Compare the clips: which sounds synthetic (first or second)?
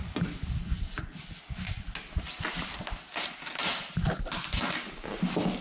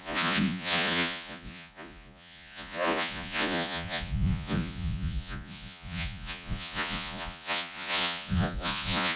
second